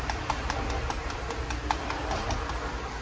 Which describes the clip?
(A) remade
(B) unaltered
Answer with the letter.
B